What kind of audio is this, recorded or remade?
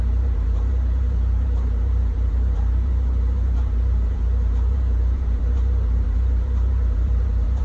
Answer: remade